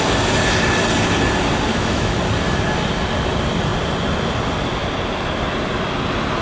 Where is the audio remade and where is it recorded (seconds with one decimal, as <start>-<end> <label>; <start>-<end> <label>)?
0.0-1.7 recorded; 1.7-2.2 remade; 2.2-6.4 recorded